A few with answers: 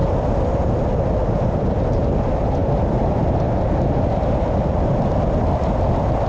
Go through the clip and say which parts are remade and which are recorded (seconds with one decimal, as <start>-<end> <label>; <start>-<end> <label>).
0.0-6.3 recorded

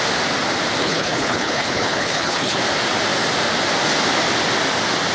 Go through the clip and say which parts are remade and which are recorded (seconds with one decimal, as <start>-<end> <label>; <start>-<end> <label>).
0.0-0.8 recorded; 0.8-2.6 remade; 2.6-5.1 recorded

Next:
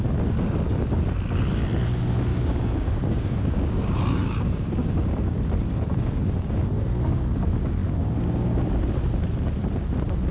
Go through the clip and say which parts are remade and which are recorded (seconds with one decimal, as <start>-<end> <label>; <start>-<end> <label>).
0.0-2.3 recorded; 2.3-5.4 remade; 5.4-10.3 recorded

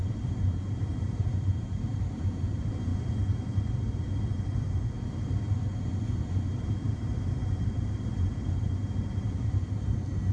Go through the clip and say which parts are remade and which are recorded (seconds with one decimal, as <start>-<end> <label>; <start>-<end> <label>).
0.0-2.9 remade; 2.9-6.2 recorded; 6.2-10.3 remade

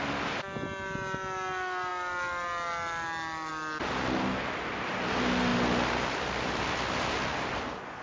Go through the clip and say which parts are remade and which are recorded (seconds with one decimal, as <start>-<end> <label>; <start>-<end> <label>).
0.0-5.5 recorded; 5.5-6.6 remade; 6.6-8.0 recorded